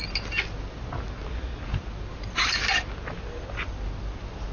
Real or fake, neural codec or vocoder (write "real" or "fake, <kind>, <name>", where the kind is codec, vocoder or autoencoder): real